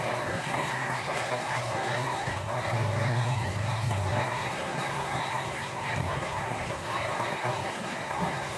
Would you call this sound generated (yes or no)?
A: yes